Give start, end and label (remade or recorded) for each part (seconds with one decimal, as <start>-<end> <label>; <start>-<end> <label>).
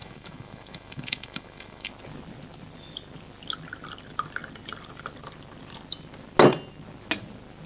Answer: 0.0-1.9 remade; 1.9-7.7 recorded